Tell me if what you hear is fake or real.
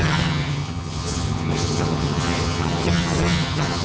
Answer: fake